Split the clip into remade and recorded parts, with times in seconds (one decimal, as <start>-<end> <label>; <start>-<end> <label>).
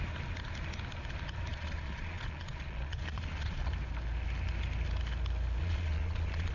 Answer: 0.0-1.5 recorded; 1.5-3.7 remade; 3.7-5.6 recorded; 5.6-6.5 remade